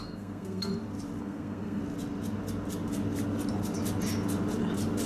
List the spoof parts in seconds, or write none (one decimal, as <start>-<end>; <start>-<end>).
0.0-0.7; 1.2-1.8